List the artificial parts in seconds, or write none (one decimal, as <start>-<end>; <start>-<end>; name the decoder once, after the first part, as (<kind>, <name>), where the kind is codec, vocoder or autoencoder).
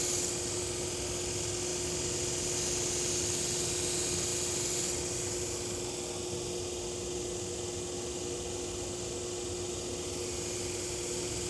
none